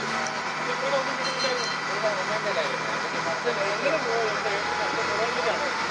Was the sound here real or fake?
real